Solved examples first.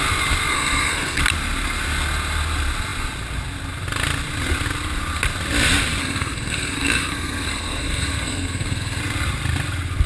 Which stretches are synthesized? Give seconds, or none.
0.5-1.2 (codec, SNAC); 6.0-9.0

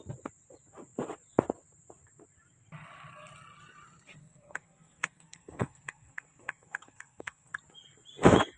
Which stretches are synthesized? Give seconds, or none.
4.2-7.5 (codec, SNAC)

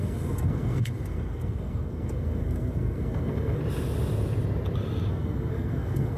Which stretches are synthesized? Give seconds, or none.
0.0-3.6 (codec, SNAC); 5.1-6.2

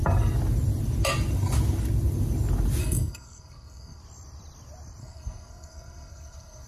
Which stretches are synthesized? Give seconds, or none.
2.8-4.0 (codec, SNAC); 5.0-6.7

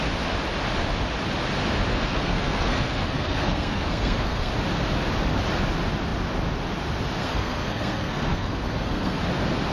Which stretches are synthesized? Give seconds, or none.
1.9-4.5 (codec, SNAC); 7.2-9.2

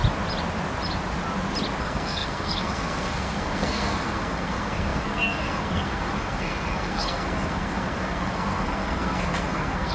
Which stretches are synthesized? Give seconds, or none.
1.8-9.9 (codec, SNAC)